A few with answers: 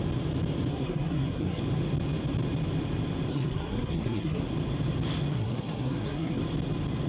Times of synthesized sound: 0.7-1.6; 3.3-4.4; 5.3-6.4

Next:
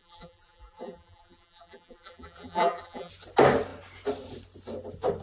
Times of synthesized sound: 0.0-3.1

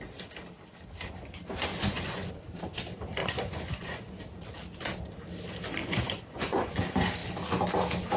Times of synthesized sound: 1.7-2.3; 3.2-4.2; 5.8-6.8

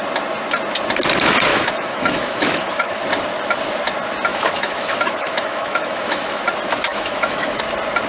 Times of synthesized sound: 1.5-3.0; 4.3-6.4; 6.9-7.6

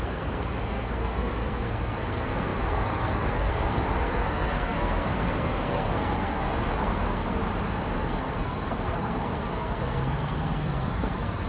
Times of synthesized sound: 0.0-7.4; 8.0-11.5

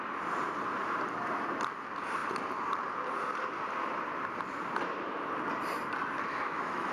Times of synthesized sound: 6.3-6.9

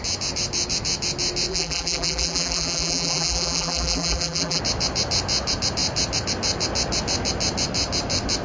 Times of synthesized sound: 1.5-4.6